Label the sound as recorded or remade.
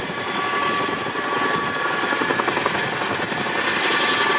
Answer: recorded